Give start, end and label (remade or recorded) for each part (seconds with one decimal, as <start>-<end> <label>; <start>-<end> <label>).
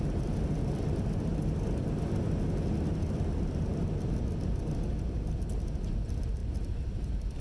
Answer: 0.0-6.4 recorded; 6.4-7.0 remade; 7.0-7.4 recorded